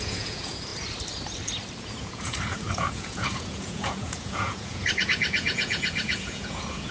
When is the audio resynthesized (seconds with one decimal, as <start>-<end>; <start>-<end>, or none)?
0.0-0.7; 2.0-6.9